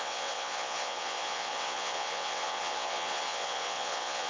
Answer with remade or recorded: remade